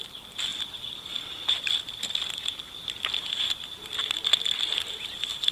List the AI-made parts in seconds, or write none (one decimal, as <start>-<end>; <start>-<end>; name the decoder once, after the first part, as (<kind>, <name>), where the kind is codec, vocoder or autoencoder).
none